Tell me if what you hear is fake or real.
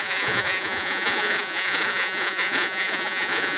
fake